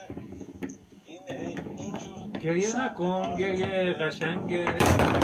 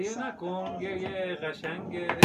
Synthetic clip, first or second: first